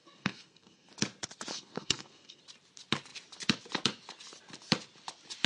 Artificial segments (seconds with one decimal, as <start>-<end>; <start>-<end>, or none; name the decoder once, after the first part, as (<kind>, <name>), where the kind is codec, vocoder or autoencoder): 0.0-0.9 (codec, SNAC); 1.5-2.4